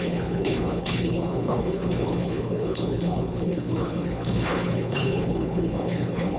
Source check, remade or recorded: remade